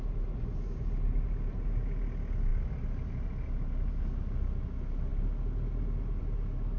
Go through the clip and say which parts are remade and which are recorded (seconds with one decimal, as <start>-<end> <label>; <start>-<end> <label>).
0.0-6.8 recorded